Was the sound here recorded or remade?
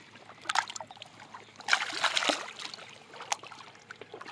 recorded